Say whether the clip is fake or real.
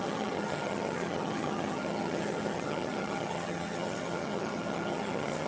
fake